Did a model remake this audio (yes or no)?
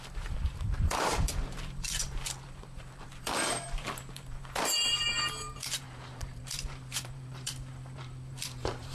yes